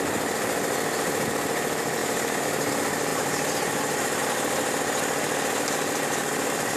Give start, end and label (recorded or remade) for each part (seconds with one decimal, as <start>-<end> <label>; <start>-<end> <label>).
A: 0.0-2.0 recorded; 2.0-2.7 remade; 2.7-3.1 recorded; 3.1-4.2 remade; 4.2-6.8 recorded

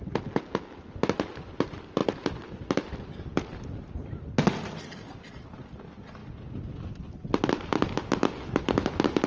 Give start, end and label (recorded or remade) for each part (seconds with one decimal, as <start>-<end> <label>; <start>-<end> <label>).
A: 0.0-2.0 recorded; 2.0-3.9 remade; 3.9-9.3 recorded

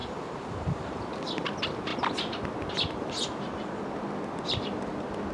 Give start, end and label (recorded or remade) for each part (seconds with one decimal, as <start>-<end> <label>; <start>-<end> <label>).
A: 0.0-1.1 remade; 1.1-5.3 recorded

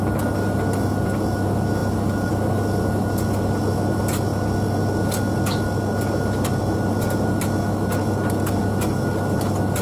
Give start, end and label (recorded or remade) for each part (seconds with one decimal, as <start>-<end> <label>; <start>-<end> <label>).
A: 0.0-9.8 recorded

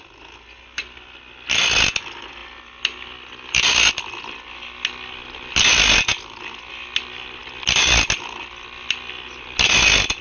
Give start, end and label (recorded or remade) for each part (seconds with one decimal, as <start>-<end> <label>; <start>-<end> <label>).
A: 0.0-10.2 recorded

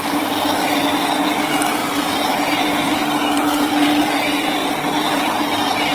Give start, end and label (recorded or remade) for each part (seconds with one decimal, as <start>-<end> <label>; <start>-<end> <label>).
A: 0.0-1.8 recorded; 1.8-3.7 remade; 3.7-4.6 recorded; 4.6-5.3 remade; 5.3-5.9 recorded

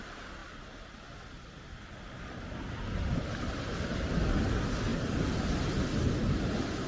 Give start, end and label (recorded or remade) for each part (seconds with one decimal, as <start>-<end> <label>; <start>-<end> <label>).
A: 0.0-4.9 recorded; 4.9-5.7 remade; 5.7-6.9 recorded